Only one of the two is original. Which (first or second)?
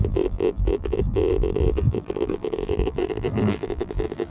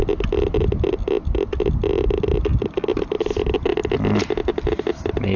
second